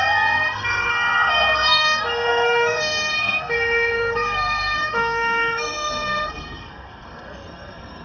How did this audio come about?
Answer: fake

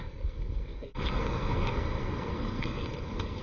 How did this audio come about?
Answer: fake